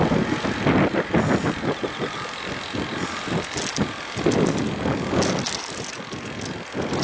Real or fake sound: real